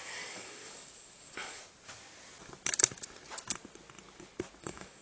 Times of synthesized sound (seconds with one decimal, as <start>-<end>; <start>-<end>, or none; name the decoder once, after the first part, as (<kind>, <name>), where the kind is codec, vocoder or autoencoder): 0.0-1.6 (codec, DAC); 4.6-5.0